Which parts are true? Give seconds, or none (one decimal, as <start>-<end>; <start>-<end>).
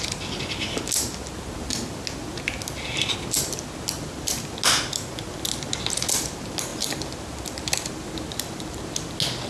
0.0-9.5